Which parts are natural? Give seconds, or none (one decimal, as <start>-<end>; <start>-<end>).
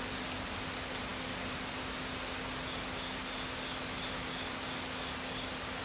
0.0-5.8